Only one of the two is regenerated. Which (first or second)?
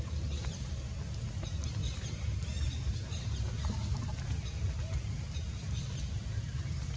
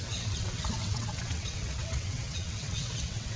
second